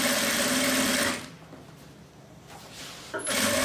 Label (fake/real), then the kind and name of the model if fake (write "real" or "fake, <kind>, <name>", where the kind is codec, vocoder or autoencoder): fake, vocoder, BigVGAN v2